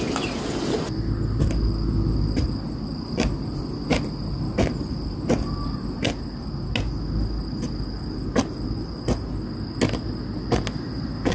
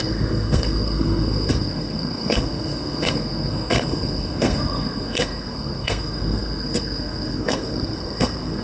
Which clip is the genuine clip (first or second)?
first